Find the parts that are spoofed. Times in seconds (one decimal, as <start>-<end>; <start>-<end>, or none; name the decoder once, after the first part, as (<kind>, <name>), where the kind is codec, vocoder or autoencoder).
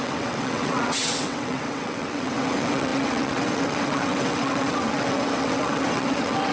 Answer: 0.0-6.5 (vocoder, WaveNeXt)